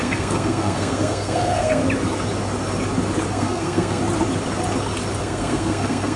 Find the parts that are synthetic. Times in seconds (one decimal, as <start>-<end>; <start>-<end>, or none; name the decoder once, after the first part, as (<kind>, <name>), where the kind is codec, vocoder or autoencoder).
0.0-1.8 (codec, SNAC); 3.3-4.0; 5.2-6.2